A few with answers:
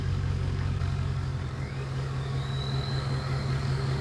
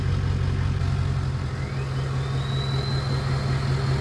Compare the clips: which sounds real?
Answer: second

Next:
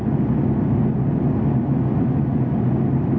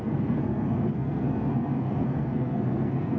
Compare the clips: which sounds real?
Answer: first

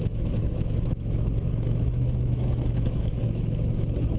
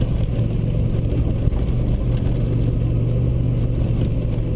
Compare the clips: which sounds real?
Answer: second